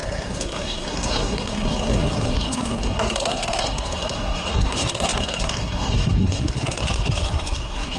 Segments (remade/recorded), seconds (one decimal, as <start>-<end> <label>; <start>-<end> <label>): 0.0-8.0 remade